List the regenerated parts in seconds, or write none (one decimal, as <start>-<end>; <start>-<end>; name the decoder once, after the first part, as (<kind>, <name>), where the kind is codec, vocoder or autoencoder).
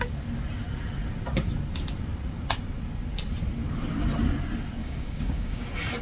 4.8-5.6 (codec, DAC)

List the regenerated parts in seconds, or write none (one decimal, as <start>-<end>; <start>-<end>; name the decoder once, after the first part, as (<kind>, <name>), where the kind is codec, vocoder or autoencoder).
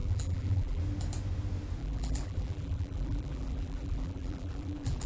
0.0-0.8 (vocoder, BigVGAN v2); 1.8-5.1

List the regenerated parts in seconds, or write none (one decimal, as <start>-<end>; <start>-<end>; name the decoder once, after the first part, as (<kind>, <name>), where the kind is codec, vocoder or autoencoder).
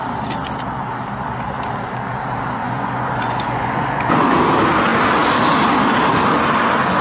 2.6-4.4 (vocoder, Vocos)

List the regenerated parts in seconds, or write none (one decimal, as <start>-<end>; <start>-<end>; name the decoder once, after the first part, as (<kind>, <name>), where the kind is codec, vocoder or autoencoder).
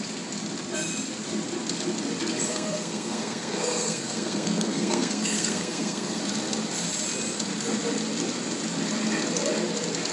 2.5-6.2 (codec, SNAC)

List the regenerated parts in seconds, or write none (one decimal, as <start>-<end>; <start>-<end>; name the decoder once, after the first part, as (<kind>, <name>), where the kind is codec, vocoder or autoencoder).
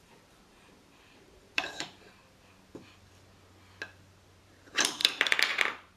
0.0-2.2 (vocoder, BigVGAN v2); 4.4-6.0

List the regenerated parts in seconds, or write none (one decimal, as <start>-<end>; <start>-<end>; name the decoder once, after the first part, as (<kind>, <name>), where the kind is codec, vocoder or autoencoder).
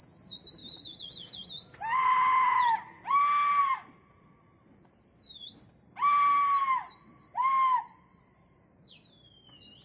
7.7-8.6 (vocoder, BigVGAN v2)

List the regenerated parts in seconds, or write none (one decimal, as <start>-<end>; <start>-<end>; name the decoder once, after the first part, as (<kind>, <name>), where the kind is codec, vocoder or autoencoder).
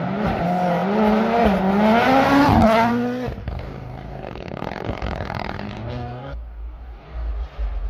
3.4-7.3 (codec, DAC)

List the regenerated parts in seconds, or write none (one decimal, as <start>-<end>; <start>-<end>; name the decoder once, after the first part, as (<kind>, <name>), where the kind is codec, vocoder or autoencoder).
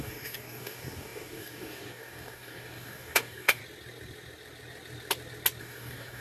0.0-3.6 (codec, DAC); 5.6-6.2